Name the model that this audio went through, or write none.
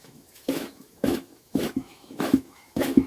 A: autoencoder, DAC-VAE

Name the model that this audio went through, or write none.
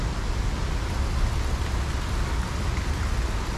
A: none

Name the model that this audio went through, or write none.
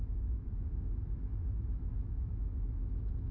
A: autoencoder, DAC-VAE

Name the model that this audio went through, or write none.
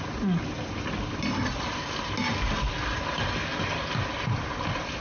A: none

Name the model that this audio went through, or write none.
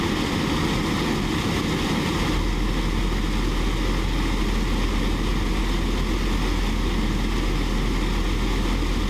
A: none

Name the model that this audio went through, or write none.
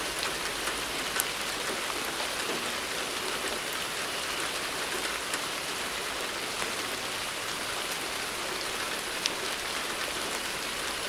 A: none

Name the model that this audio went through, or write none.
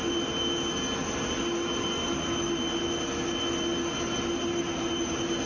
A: none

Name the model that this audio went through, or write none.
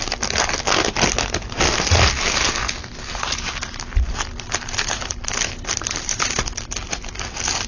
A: none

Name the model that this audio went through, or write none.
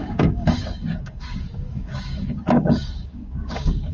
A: codec, DAC